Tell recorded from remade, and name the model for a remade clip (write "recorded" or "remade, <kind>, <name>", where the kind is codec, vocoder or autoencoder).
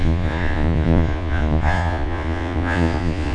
remade, vocoder, Vocos